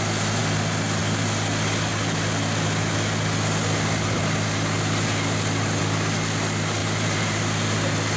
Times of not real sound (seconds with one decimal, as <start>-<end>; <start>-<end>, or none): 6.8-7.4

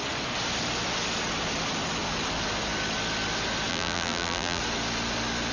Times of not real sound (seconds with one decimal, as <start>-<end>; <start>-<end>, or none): 3.7-4.6

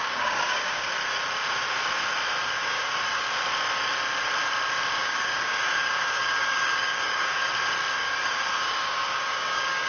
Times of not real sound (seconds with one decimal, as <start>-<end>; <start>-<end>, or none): 0.0-0.9; 2.6-3.2; 5.0-7.5; 8.0-9.9